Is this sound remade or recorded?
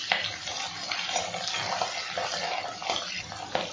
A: recorded